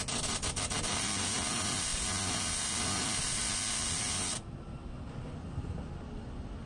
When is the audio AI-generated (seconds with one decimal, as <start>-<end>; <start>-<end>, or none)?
none